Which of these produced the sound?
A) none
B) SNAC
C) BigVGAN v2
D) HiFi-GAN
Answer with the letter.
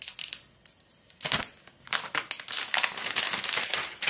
A